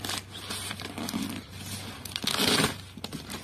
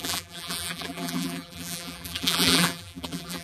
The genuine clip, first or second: first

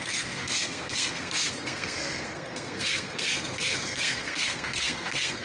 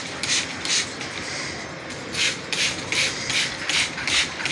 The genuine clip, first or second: second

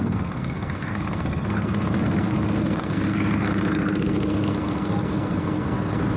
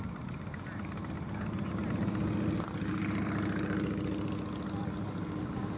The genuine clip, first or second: second